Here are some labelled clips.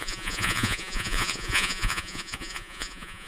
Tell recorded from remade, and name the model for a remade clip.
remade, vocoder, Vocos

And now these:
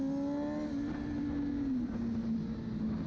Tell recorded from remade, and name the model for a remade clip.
recorded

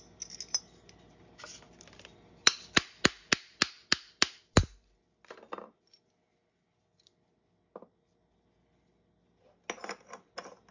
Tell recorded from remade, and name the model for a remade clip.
recorded